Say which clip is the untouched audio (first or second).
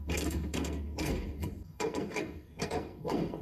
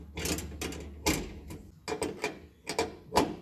second